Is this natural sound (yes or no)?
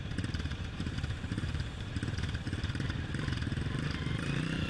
no